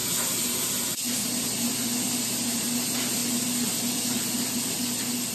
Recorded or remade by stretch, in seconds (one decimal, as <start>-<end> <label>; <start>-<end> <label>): 0.0-1.4 recorded; 1.4-3.2 remade; 3.2-5.3 recorded